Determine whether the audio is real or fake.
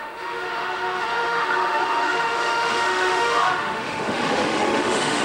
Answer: fake